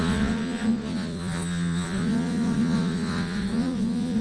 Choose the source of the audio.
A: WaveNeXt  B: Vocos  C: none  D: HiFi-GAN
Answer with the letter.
B